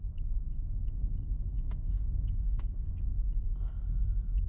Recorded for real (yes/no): no